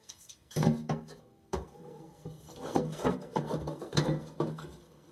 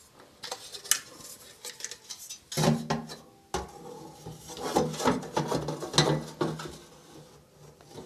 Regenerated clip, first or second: first